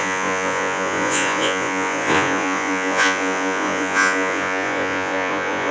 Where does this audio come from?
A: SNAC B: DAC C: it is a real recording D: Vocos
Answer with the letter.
D